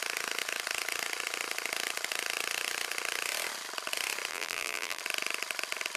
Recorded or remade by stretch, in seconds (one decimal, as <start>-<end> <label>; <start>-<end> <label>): 0.0-4.3 recorded; 4.3-5.0 remade; 5.0-6.0 recorded